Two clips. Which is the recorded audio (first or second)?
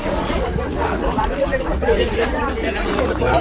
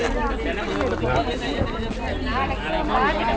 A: second